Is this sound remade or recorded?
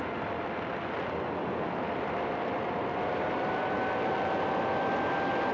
recorded